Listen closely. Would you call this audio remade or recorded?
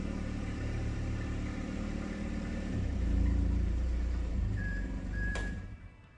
remade